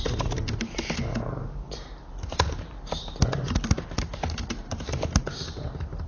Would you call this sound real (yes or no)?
no